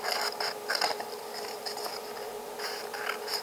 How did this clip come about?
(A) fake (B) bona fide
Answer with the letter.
B